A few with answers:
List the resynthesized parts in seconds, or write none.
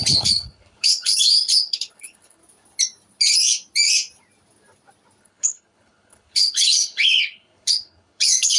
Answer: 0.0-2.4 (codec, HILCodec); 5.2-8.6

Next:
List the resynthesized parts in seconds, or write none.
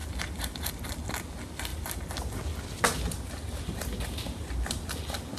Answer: none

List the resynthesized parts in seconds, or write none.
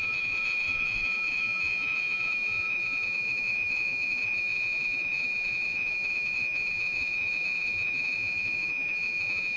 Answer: 0.0-9.6 (vocoder, Vocos)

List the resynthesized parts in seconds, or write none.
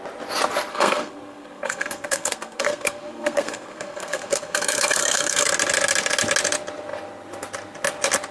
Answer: 0.7-5.5 (codec, SNAC)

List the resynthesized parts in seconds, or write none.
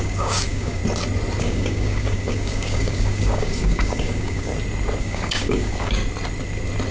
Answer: 0.0-0.8 (codec, DAC); 1.4-4.5; 5.0-6.0